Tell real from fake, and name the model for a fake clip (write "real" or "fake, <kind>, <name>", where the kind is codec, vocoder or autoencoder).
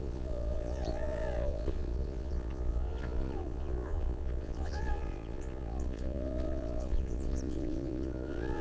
fake, vocoder, Vocos